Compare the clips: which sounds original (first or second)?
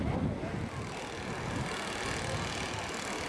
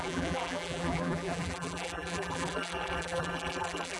first